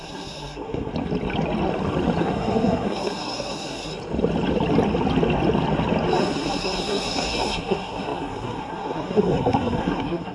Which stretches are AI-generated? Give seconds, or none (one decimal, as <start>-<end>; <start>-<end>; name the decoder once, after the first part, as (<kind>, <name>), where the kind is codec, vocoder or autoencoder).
0.0-0.9 (codec, SNAC); 2.2-3.9; 6.2-10.3